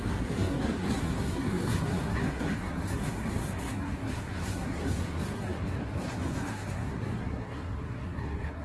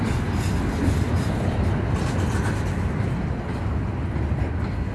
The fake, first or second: first